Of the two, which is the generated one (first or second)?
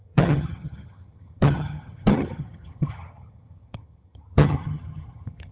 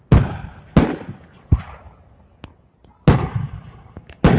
first